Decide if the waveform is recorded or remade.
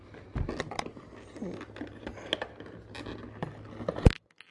recorded